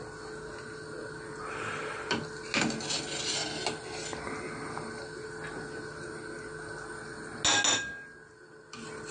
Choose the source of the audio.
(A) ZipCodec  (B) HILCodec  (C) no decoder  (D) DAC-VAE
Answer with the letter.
C